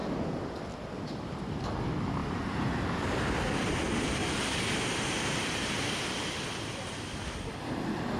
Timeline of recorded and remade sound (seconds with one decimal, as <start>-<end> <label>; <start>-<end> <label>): 0.0-2.2 recorded; 2.2-3.0 remade; 3.0-4.2 recorded; 4.2-6.3 remade; 6.3-8.2 recorded

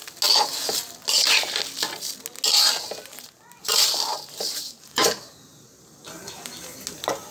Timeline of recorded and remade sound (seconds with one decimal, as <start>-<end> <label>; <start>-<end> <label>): 0.0-3.6 recorded; 3.6-6.2 remade; 6.2-7.3 recorded